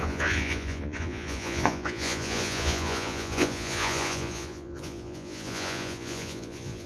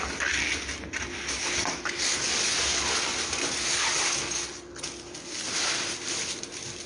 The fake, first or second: first